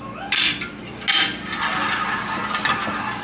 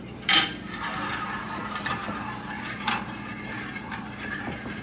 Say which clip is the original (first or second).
first